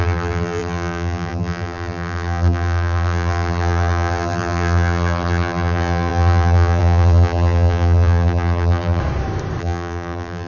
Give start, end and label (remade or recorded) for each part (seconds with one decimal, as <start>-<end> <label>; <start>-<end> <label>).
0.0-9.0 remade; 9.0-9.6 recorded; 9.6-10.5 remade